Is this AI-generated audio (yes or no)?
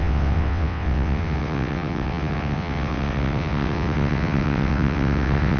yes